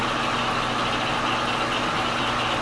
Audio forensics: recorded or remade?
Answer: recorded